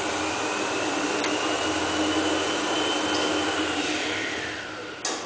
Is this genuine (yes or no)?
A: yes